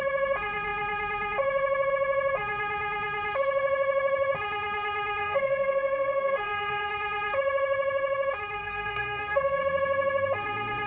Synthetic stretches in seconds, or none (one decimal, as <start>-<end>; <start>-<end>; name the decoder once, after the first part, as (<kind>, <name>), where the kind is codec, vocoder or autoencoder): 5.2-6.9 (codec, SNAC); 8.6-9.6